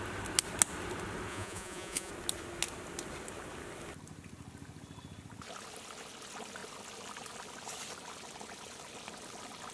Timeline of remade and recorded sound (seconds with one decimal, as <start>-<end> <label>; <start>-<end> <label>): 0.0-1.3 recorded; 1.3-2.1 remade; 2.1-9.7 recorded